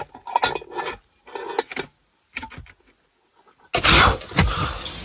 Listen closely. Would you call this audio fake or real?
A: real